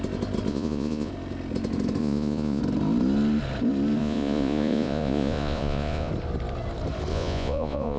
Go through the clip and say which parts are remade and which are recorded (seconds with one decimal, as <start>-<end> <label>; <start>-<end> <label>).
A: 0.0-0.5 recorded; 0.5-1.1 remade; 1.1-2.0 recorded; 2.0-2.6 remade; 2.6-4.0 recorded; 4.0-6.1 remade; 6.1-7.1 recorded; 7.1-8.0 remade